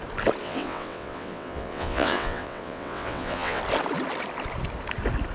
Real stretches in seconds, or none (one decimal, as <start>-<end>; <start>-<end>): 0.0-0.4; 3.6-5.3